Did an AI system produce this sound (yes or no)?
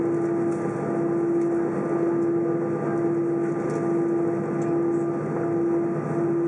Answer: no